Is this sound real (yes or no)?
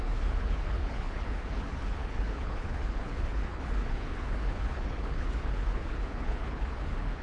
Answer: no